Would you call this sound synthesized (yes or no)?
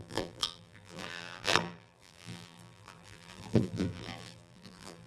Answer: yes